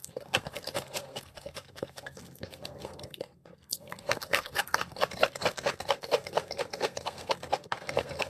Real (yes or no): no